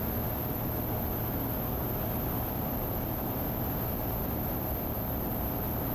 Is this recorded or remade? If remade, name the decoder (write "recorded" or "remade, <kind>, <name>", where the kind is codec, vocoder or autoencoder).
recorded